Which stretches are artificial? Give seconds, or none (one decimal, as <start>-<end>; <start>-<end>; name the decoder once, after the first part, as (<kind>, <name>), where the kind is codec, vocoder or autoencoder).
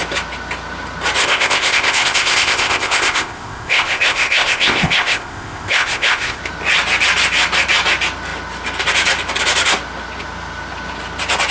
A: 1.2-6.4 (codec, ZipCodec)